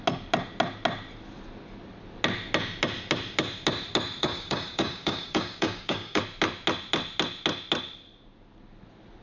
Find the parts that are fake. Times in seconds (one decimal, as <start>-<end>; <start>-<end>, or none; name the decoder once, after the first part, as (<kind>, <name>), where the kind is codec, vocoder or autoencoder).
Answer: 4.2-6.2 (codec, DAC)